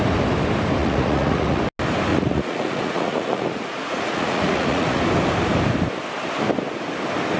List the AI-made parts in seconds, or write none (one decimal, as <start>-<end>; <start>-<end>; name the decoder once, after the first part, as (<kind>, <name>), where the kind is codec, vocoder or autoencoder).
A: 0.8-1.6 (vocoder, Vocos); 2.1-5.0